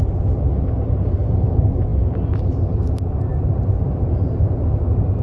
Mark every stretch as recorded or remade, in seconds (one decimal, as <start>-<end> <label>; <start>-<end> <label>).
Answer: 0.0-3.3 recorded; 3.3-4.7 remade; 4.7-5.2 recorded